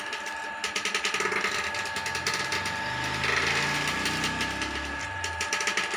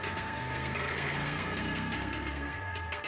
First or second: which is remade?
second